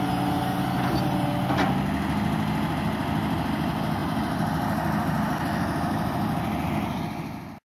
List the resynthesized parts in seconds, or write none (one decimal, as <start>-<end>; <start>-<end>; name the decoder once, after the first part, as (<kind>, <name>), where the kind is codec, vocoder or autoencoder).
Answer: none